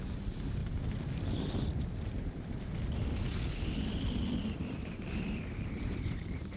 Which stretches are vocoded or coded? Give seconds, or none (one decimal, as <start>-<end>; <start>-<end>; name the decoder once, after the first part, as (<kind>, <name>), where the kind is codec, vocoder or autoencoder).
0.0-0.6 (vocoder, BigVGAN v2); 4.6-6.6